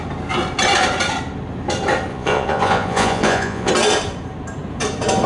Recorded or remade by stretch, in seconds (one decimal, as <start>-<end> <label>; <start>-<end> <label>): 0.0-2.1 recorded; 2.1-3.7 remade; 3.7-5.3 recorded